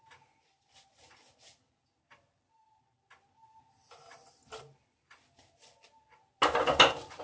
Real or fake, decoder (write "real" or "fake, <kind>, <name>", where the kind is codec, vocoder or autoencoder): real